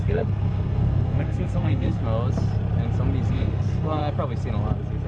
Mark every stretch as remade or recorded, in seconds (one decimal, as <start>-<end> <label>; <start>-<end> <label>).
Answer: 0.0-2.0 remade; 2.0-3.3 recorded; 3.3-4.0 remade; 4.0-5.1 recorded